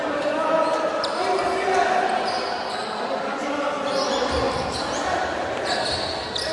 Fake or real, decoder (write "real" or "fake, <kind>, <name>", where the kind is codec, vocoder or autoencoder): real